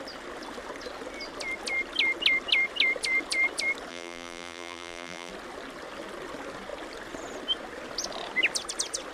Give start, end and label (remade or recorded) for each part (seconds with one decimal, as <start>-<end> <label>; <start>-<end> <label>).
0.0-3.9 recorded; 3.9-5.3 remade; 5.3-9.1 recorded